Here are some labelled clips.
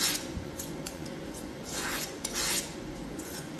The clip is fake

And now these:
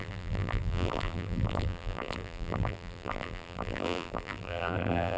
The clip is fake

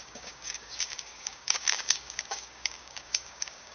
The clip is fake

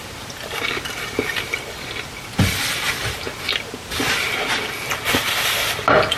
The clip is real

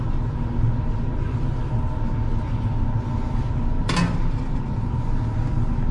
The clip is real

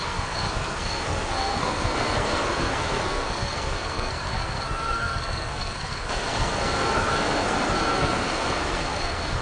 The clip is fake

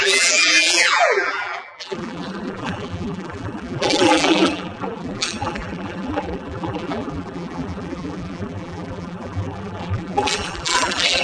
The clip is fake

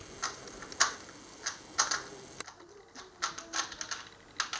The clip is real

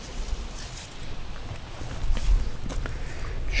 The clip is real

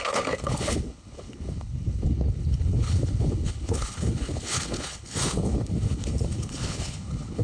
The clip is fake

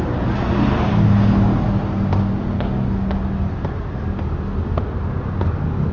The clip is real